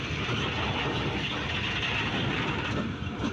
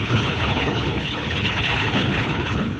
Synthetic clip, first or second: second